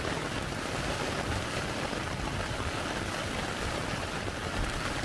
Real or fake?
fake